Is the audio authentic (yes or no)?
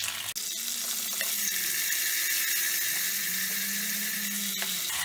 yes